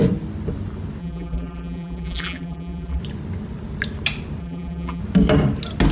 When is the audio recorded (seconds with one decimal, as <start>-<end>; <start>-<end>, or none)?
0.0-1.0; 3.0-4.4; 5.0-5.9

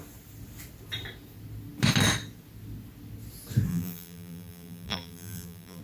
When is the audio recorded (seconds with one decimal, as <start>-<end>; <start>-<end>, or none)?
0.0-3.7

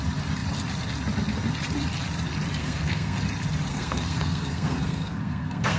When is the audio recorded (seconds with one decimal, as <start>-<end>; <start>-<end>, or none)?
0.0-2.6; 3.2-3.7

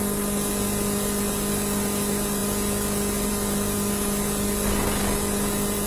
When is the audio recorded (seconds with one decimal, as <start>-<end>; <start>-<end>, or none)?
0.0-5.9

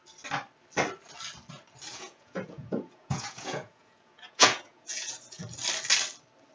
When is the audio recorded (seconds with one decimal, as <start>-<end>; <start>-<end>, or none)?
0.0-1.9; 5.4-6.5

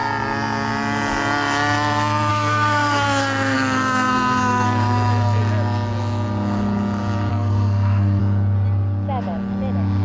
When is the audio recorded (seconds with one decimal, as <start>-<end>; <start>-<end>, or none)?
0.0-2.3; 5.4-7.3; 8.2-10.0

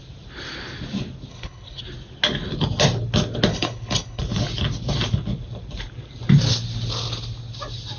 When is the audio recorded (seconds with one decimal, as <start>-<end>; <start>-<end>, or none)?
0.0-1.3; 1.8-3.5; 4.2-8.0